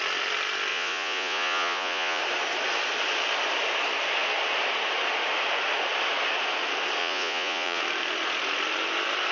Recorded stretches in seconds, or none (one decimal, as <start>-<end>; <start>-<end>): 0.0-0.7; 2.2-7.0; 7.8-9.3